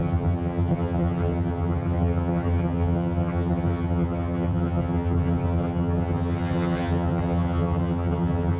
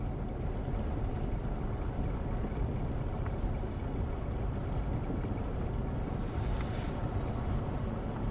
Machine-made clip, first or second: first